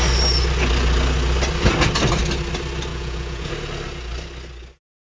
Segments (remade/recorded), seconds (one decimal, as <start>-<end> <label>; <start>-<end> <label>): 0.0-2.9 recorded; 2.9-3.5 remade; 3.5-5.1 recorded